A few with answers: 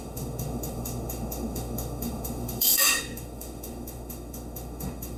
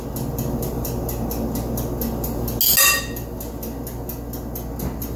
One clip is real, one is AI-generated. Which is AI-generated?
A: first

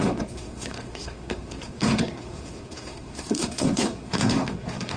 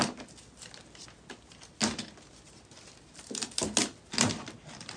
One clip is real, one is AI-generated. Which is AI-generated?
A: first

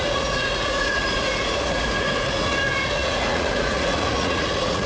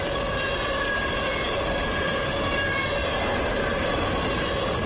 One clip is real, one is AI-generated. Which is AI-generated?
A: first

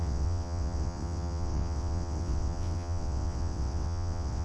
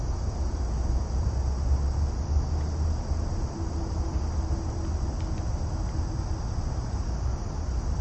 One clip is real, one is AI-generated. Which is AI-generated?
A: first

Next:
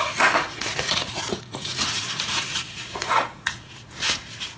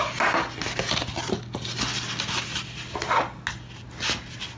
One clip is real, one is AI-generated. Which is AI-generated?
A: first